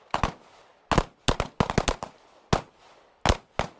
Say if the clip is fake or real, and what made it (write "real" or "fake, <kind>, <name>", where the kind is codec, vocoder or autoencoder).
real